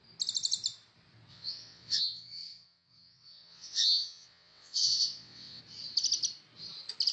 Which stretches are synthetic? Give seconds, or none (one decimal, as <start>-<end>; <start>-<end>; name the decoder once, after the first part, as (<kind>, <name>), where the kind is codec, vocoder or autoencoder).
1.3-5.6 (vocoder, WaveNeXt)